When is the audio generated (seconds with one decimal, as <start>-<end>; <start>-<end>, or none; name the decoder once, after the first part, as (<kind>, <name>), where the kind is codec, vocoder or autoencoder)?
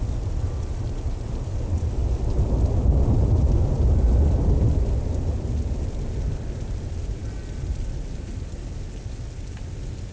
none